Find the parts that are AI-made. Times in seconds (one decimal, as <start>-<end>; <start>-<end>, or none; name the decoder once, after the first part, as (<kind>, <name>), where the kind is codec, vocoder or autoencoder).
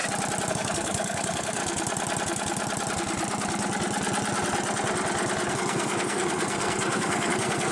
0.5-1.6 (codec, SNAC); 5.5-7.7